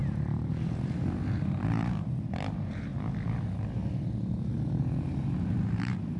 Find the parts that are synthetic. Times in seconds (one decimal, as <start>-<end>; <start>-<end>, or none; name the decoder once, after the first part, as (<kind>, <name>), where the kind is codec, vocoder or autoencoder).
0.0-2.9 (vocoder, BigVGAN v2); 4.8-6.2